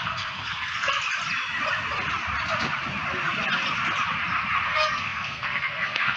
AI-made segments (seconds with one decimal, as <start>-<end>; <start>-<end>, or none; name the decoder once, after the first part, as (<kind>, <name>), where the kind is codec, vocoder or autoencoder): 0.0-0.9 (codec, SNAC); 4.6-6.2